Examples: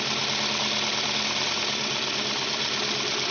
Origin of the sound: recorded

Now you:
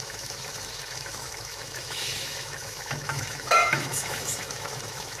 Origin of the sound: remade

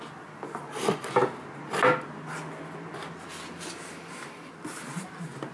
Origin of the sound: recorded